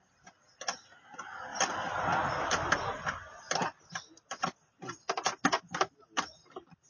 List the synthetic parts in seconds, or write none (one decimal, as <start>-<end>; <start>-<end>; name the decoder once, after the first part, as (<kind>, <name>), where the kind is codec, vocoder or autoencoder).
1.5-3.8 (vocoder, BigVGAN v2)